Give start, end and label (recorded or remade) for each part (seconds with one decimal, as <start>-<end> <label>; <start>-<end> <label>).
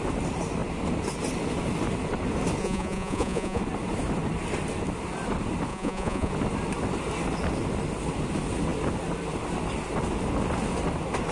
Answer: 0.0-2.6 recorded; 2.6-3.6 remade; 3.6-5.7 recorded; 5.7-6.3 remade; 6.3-11.3 recorded